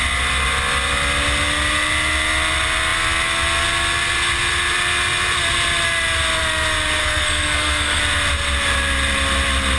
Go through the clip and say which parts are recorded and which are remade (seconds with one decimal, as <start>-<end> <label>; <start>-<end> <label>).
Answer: 0.0-7.0 recorded; 7.0-8.0 remade; 8.0-9.8 recorded